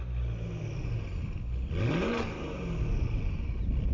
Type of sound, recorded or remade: recorded